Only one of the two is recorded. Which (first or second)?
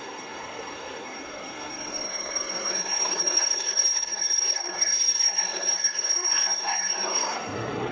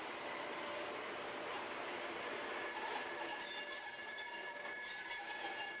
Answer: second